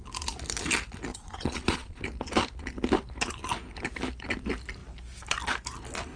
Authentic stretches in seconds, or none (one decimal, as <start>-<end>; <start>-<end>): 0.0-1.1; 2.0-6.2